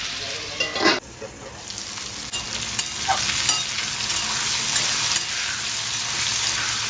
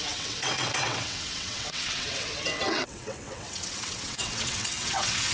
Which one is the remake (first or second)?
second